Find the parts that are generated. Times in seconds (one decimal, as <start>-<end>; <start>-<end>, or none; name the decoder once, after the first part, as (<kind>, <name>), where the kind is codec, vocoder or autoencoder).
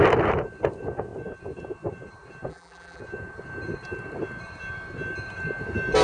2.5-3.0 (vocoder, BigVGAN v2)